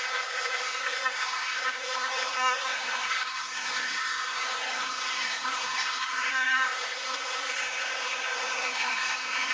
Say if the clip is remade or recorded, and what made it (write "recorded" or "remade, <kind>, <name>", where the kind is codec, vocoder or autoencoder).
remade, codec, SNAC